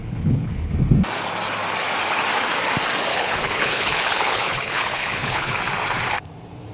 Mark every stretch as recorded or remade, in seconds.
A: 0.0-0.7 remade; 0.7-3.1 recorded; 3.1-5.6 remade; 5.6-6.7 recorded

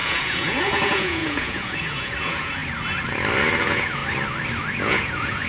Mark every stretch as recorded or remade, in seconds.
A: 0.0-2.6 remade; 2.6-3.6 recorded; 3.6-4.0 remade; 4.0-4.8 recorded; 4.8-5.5 remade

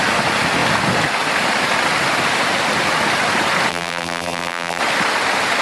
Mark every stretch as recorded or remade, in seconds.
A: 0.0-3.7 recorded; 3.7-4.8 remade; 4.8-5.6 recorded

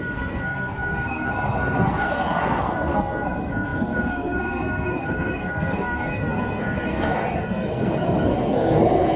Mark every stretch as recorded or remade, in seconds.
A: 0.0-9.2 remade

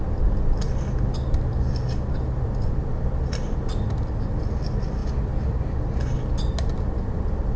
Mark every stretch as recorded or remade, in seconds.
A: 0.0-7.6 recorded

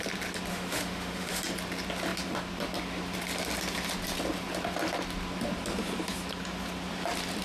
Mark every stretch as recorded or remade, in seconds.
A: 0.0-0.5 recorded; 0.5-1.4 remade; 1.4-7.4 recorded

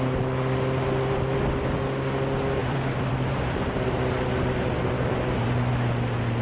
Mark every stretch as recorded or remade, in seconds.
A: 0.0-2.6 recorded; 2.6-3.3 remade; 3.3-6.4 recorded

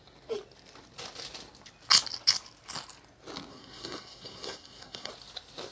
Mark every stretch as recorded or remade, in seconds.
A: 0.0-3.5 recorded; 3.5-5.1 remade; 5.1-5.7 recorded